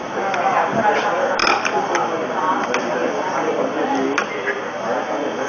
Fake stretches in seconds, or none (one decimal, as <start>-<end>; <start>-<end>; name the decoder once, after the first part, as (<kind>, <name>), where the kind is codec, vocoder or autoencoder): none